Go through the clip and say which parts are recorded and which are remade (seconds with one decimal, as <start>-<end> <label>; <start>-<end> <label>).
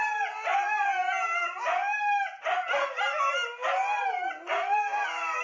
0.0-5.4 recorded